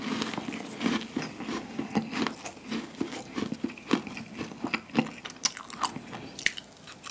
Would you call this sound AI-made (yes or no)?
no